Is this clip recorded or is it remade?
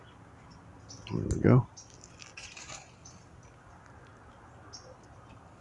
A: recorded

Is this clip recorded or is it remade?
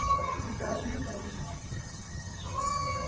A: remade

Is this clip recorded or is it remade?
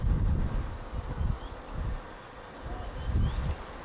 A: recorded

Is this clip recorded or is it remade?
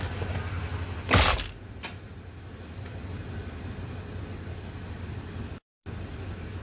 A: recorded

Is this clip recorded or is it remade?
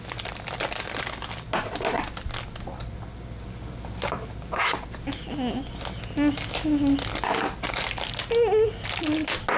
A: recorded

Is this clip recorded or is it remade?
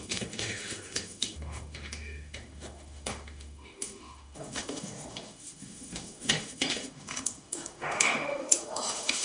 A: remade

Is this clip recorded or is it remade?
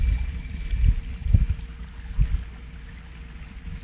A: recorded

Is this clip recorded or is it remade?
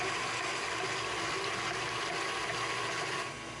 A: recorded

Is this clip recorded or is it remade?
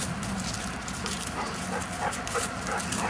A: recorded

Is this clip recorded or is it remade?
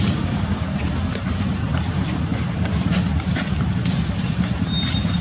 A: remade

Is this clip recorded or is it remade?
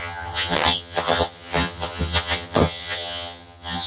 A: remade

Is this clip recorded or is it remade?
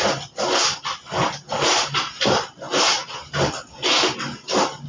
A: recorded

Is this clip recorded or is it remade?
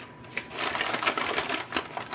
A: recorded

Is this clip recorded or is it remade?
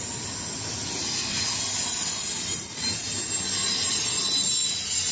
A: recorded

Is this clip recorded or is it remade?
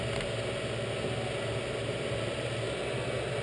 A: recorded